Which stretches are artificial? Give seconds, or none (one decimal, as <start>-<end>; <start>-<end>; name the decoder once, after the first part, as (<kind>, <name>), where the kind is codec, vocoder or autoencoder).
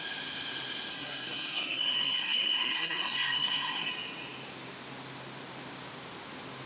0.9-3.9 (codec, SNAC)